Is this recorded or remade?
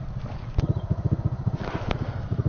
recorded